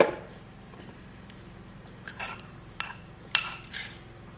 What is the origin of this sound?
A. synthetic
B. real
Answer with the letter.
A